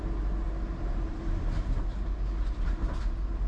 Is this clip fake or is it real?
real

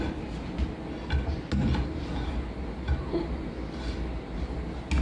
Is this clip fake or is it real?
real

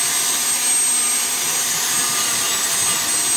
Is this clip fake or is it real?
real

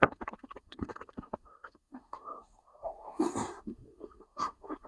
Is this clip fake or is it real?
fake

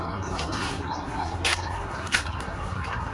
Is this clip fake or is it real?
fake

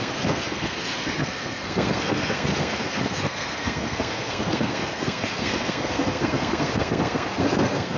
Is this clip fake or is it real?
fake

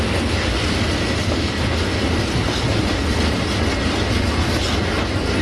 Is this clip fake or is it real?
real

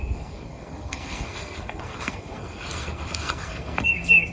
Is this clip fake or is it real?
fake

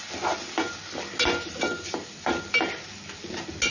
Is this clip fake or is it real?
real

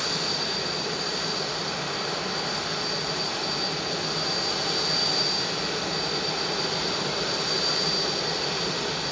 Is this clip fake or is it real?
real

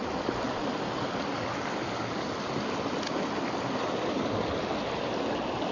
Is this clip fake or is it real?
real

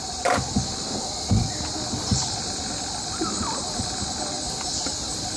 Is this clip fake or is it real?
real